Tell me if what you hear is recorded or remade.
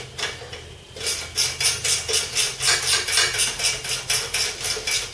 recorded